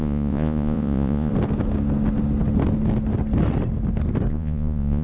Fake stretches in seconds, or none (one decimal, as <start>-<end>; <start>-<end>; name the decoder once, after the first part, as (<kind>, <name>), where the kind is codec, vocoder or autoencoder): 0.0-1.3 (vocoder, Vocos); 4.3-5.0